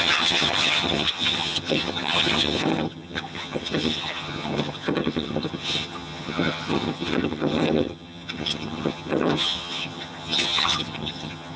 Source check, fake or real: fake